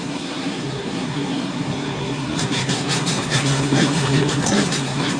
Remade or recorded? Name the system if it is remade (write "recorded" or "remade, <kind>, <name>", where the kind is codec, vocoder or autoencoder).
remade, codec, SNAC